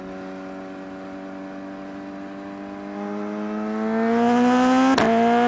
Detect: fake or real real